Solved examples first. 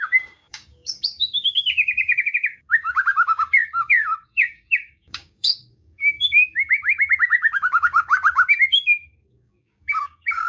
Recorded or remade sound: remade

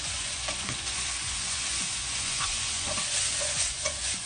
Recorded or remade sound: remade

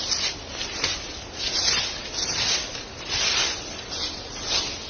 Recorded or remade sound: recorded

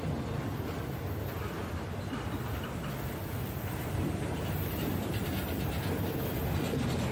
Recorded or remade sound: recorded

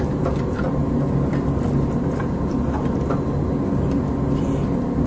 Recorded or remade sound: recorded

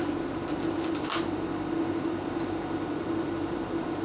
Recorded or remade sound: recorded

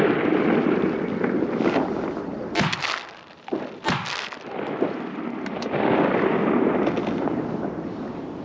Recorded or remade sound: recorded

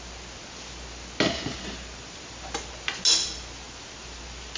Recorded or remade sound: recorded